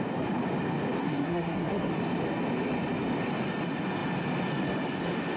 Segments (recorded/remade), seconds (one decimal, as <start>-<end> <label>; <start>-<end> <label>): 0.0-1.0 recorded; 1.0-1.9 remade; 1.9-5.4 recorded